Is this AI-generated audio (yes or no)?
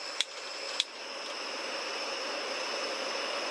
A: no